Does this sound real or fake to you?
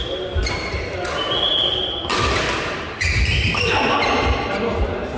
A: real